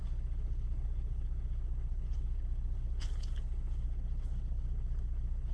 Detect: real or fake fake